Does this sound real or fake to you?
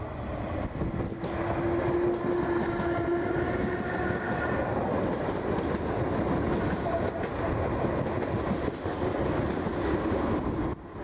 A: real